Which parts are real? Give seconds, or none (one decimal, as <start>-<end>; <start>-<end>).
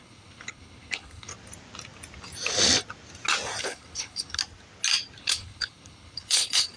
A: 1.3-3.6; 4.4-5.2